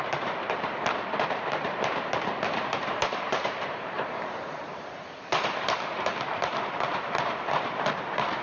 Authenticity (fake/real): fake